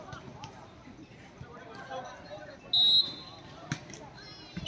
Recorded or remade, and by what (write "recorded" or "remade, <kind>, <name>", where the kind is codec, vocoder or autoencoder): recorded